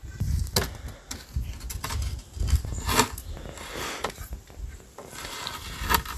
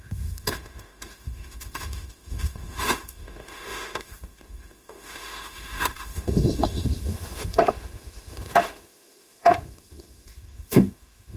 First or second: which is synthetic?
second